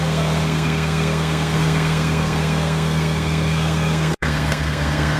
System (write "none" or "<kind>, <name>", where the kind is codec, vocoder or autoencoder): codec, SNAC